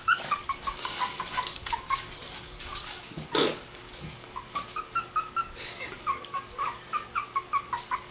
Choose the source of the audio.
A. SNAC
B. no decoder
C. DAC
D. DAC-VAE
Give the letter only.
C